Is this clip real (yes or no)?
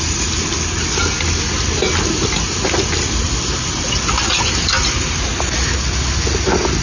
yes